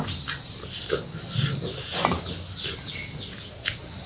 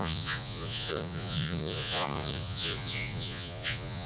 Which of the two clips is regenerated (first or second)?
second